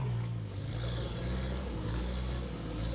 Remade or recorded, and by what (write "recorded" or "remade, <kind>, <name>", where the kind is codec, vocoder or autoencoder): remade, codec, DAC